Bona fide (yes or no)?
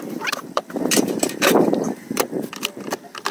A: no